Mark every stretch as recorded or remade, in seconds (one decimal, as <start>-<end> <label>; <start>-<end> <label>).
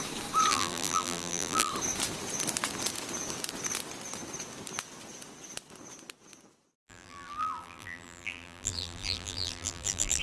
0.0-0.5 recorded; 0.5-1.7 remade; 1.7-6.8 recorded; 6.8-10.2 remade